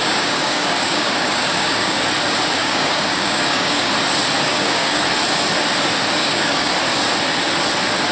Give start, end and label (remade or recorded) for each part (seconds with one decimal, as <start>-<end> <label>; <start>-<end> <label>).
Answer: 0.0-2.0 remade; 2.0-2.6 recorded; 2.6-3.9 remade; 3.9-4.5 recorded; 4.5-5.0 remade; 5.0-6.2 recorded; 6.2-6.7 remade; 6.7-8.1 recorded